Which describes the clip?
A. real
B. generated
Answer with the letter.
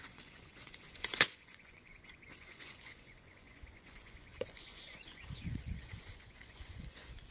B